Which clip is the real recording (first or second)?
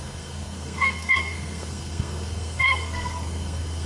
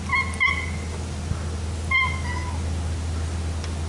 second